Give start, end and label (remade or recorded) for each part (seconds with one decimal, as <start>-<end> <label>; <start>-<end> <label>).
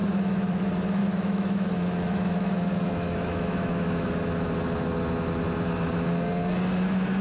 0.0-0.6 remade; 0.6-1.0 recorded; 1.0-4.1 remade; 4.1-7.2 recorded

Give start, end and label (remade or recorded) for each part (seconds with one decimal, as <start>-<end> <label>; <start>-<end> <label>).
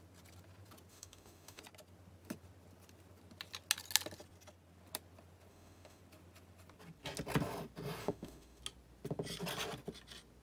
0.0-0.9 recorded; 0.9-1.6 remade; 1.6-5.5 recorded; 5.5-6.0 remade; 6.0-8.0 recorded; 8.0-8.6 remade; 8.6-10.4 recorded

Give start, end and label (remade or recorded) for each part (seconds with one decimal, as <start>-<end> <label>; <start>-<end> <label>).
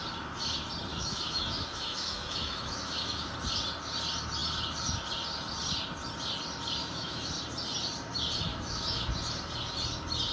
0.0-0.9 recorded; 0.9-3.3 remade; 3.3-6.8 recorded; 6.8-7.3 remade; 7.3-8.5 recorded; 8.5-9.0 remade; 9.0-10.3 recorded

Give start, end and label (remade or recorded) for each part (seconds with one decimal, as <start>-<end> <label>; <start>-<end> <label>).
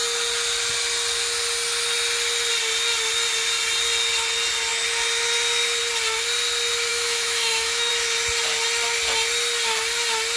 0.0-6.9 recorded; 6.9-7.9 remade; 7.9-10.4 recorded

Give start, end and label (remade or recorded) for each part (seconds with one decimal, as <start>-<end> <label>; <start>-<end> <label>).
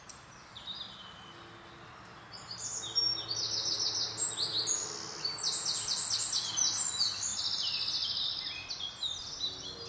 0.0-9.9 recorded